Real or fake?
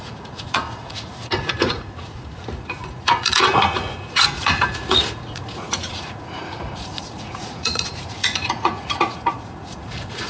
fake